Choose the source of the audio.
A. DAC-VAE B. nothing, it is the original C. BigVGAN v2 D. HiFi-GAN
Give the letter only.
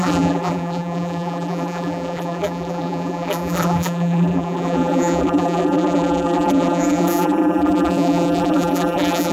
C